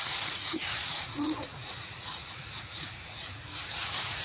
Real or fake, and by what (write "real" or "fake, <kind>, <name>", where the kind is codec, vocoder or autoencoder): fake, vocoder, Vocos